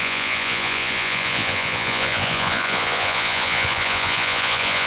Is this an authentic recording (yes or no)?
no